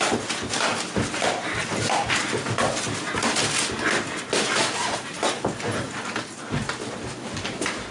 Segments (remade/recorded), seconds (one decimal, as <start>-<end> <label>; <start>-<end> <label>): 0.0-7.9 recorded